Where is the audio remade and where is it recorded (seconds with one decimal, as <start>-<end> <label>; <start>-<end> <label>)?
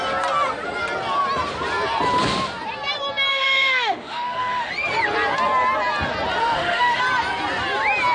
0.0-3.3 recorded; 3.3-4.7 remade; 4.7-6.4 recorded; 6.4-7.0 remade; 7.0-8.1 recorded